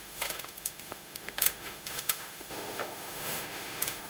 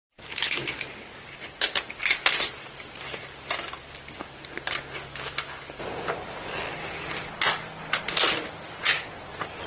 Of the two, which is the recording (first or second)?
second